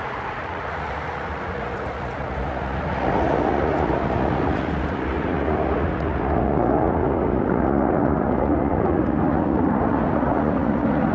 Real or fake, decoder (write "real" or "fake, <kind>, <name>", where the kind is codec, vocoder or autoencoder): fake, vocoder, Vocos